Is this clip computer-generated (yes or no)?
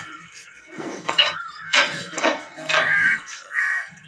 yes